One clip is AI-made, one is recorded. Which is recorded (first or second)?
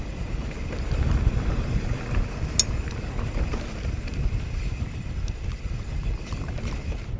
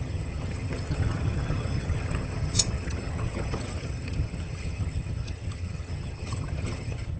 first